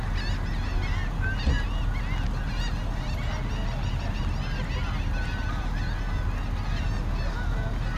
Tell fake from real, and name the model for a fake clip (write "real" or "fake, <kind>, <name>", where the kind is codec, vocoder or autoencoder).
real